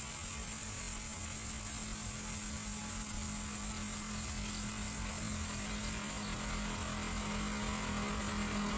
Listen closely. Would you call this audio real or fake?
real